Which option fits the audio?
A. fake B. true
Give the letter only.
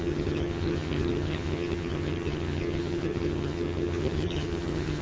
A